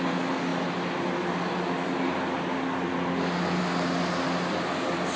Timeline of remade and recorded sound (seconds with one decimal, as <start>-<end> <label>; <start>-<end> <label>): 0.0-5.2 recorded

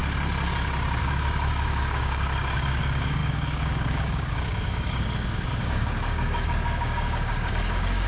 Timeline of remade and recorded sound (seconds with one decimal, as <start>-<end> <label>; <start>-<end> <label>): 0.0-1.0 recorded; 1.0-8.1 remade